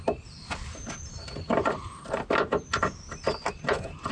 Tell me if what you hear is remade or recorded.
recorded